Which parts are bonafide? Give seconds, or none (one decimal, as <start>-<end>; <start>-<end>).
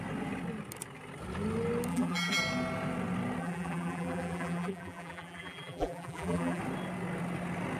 0.0-1.9; 2.4-3.4; 6.6-7.8